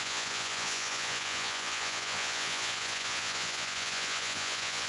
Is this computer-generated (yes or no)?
yes